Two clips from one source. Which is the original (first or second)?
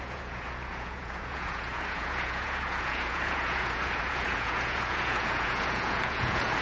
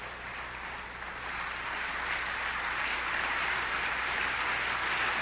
second